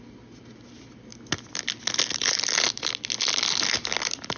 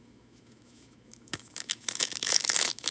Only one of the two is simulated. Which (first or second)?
second